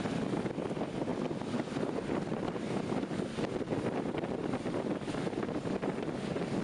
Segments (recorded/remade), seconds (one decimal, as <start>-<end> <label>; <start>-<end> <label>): 0.0-6.6 recorded

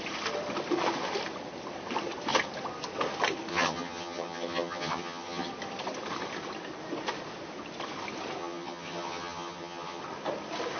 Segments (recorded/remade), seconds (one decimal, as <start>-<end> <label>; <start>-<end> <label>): 0.0-3.5 recorded; 3.5-5.5 remade; 5.5-8.4 recorded; 8.4-10.0 remade; 10.0-10.8 recorded

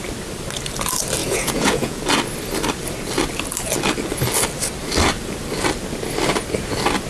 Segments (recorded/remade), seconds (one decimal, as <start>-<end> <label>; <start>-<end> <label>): 0.0-1.2 recorded; 1.2-2.0 remade; 2.0-7.1 recorded

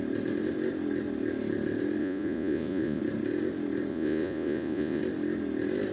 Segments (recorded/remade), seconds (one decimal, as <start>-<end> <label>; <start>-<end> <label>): 0.0-2.0 recorded; 2.0-3.0 remade; 3.0-3.9 recorded; 3.9-5.0 remade; 5.0-5.9 recorded

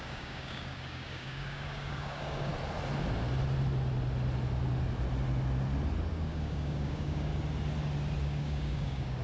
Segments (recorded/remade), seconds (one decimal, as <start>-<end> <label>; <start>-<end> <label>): 0.0-2.5 remade; 2.5-6.1 recorded; 6.1-7.3 remade; 7.3-8.2 recorded; 8.2-9.2 remade

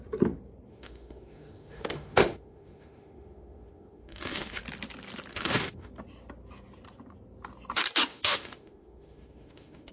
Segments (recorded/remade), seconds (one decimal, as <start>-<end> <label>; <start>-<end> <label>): 0.0-0.7 recorded; 0.7-4.6 remade; 4.6-5.3 recorded; 5.3-5.9 remade; 5.9-8.1 recorded; 8.1-9.9 remade

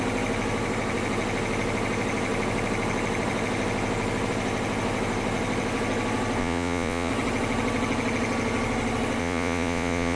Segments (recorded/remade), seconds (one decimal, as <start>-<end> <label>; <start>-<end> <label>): 0.0-6.4 recorded; 6.4-7.1 remade; 7.1-9.2 recorded; 9.2-10.2 remade